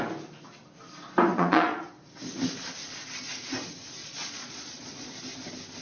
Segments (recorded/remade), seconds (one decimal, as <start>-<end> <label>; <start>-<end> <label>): 0.0-1.3 recorded; 1.3-1.9 remade; 1.9-4.0 recorded; 4.0-5.1 remade; 5.1-5.8 recorded